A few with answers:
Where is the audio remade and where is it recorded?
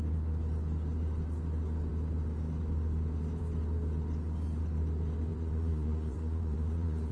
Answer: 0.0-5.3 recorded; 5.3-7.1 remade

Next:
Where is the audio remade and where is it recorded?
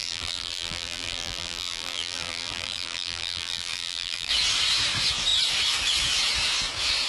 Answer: 0.0-4.3 remade; 4.3-7.1 recorded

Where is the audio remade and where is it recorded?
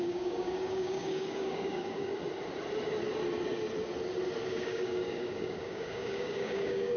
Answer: 0.0-2.1 remade; 2.1-4.4 recorded; 4.4-7.0 remade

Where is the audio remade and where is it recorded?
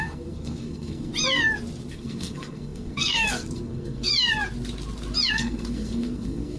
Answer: 0.0-1.1 remade; 1.1-1.9 recorded; 1.9-4.1 remade; 4.1-5.3 recorded; 5.3-6.6 remade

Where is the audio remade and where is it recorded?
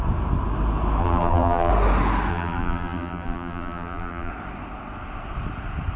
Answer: 0.0-1.0 recorded; 1.0-1.7 remade; 1.7-2.3 recorded; 2.3-4.3 remade; 4.3-6.0 recorded